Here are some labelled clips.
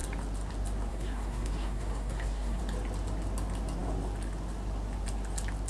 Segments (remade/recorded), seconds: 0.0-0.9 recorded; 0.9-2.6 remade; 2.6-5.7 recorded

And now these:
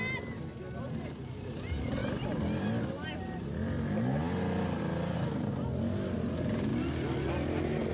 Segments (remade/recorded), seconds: 0.0-7.9 recorded